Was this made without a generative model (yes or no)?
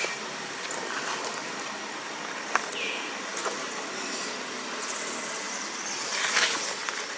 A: yes